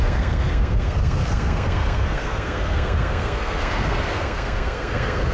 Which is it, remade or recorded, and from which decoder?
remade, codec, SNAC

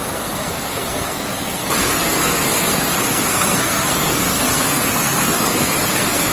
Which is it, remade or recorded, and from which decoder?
remade, codec, SNAC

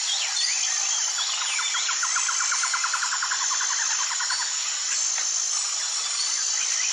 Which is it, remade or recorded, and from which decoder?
recorded